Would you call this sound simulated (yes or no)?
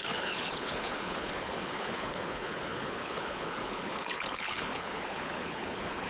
yes